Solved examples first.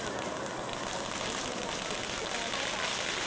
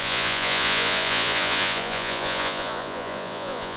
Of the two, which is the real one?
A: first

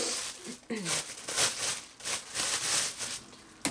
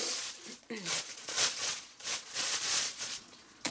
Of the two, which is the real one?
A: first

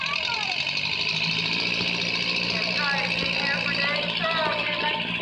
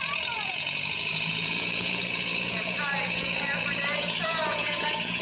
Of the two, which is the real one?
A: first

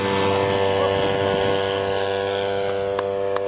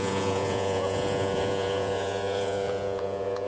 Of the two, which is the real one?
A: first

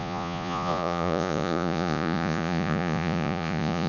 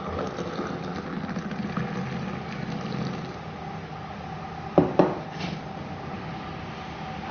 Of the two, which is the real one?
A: second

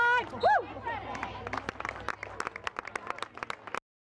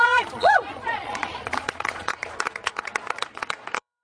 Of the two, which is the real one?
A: first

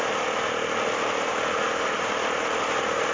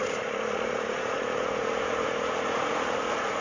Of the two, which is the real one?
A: first